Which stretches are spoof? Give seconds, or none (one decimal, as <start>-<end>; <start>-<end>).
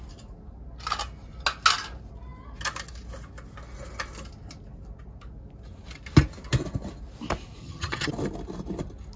7.6-8.1